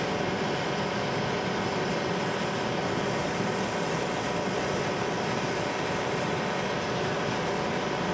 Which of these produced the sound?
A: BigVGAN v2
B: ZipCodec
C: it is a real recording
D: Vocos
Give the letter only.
C